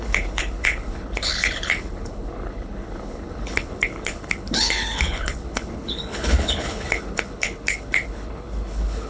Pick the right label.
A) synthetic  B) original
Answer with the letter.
A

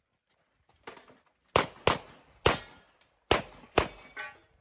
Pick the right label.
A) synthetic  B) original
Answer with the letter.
B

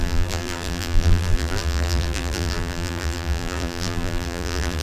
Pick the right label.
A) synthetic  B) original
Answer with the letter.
A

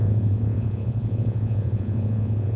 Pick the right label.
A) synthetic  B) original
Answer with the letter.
A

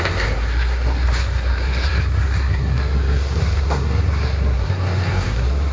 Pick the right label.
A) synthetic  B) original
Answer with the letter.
A